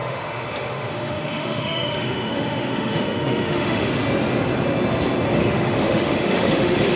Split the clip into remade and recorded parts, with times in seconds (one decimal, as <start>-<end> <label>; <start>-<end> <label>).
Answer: 0.0-3.9 remade; 3.9-5.4 recorded; 5.4-7.0 remade

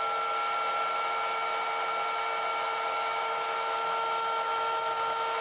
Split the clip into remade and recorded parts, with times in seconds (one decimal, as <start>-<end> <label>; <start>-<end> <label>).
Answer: 0.0-2.5 recorded; 2.5-5.4 remade

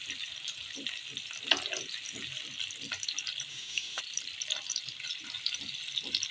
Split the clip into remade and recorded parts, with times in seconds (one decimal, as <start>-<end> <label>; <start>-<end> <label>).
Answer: 0.0-3.5 recorded; 3.5-4.0 remade; 4.0-6.3 recorded

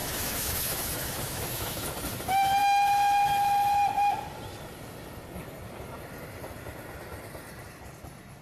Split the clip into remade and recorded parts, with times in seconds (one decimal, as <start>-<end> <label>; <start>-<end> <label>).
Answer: 0.0-1.9 remade; 1.9-8.4 recorded